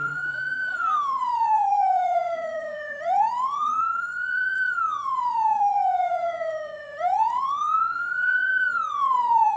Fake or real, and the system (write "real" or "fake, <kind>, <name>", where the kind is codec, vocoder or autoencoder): fake, vocoder, Vocos